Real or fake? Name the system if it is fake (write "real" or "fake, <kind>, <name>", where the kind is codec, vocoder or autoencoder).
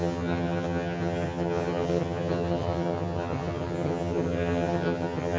fake, vocoder, HiFi-GAN